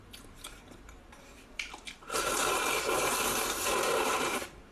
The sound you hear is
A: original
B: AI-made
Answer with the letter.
B